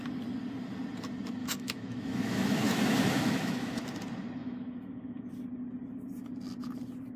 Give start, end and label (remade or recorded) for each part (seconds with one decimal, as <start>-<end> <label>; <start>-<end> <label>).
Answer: 0.0-1.4 recorded; 1.4-3.8 remade; 3.8-4.4 recorded; 4.4-5.3 remade; 5.3-7.2 recorded